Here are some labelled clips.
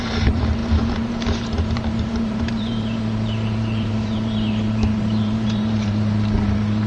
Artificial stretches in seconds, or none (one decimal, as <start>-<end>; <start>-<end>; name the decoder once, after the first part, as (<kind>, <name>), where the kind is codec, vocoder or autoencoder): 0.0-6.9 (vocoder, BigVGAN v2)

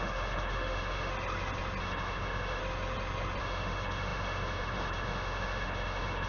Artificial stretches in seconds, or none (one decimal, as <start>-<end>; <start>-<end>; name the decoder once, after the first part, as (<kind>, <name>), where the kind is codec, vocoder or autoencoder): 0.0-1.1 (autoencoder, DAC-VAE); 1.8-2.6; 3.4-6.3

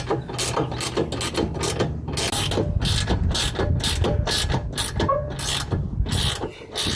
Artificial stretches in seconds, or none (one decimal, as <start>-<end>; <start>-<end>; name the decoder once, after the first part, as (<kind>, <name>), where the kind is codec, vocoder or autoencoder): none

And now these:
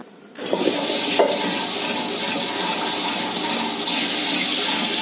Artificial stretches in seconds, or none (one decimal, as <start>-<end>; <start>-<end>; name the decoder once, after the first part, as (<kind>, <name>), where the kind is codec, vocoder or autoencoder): 0.0-0.9 (vocoder, BigVGAN v2)

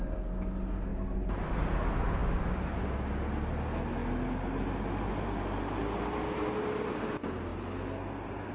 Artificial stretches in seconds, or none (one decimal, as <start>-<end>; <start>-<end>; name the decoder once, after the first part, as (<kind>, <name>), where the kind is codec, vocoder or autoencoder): 0.9-1.7 (vocoder, BigVGAN v2); 2.2-2.8

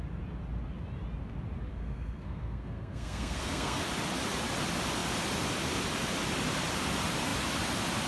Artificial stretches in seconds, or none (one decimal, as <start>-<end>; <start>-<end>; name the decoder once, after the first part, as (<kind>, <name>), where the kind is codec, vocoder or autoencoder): 1.7-3.8 (codec, SNAC)